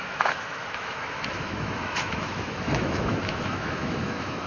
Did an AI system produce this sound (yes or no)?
yes